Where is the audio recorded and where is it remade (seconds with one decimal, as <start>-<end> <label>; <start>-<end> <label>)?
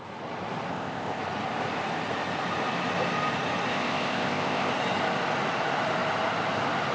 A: 0.0-0.7 recorded; 0.7-1.2 remade; 1.2-3.7 recorded; 3.7-4.7 remade; 4.7-6.9 recorded